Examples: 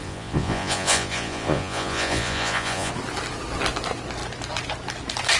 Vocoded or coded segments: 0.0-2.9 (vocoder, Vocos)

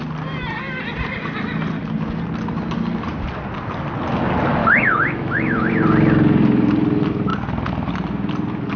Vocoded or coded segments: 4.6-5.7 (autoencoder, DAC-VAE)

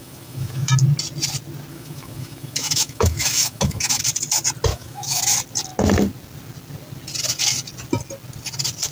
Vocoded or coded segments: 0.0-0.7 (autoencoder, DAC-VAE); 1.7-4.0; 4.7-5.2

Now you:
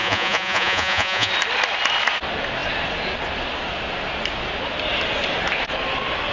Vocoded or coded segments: 0.0-1.3 (vocoder, Vocos)

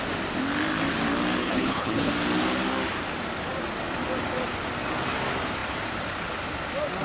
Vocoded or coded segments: 1.4-2.1 (codec, HILCodec)

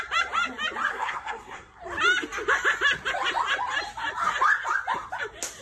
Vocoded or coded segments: 0.9-1.8 (codec, SNAC)